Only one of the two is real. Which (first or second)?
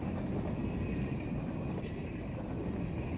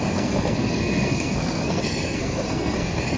first